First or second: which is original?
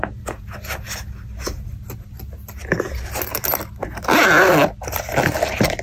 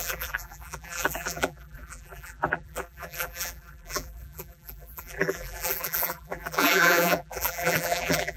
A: first